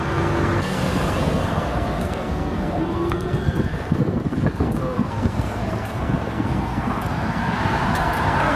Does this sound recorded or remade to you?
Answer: remade